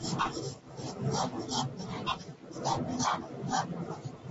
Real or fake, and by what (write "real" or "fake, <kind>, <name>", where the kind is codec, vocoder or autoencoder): real